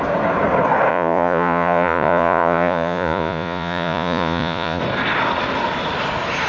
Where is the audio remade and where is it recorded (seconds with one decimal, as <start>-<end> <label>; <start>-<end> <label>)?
0.0-0.9 recorded; 0.9-4.8 remade; 4.8-6.5 recorded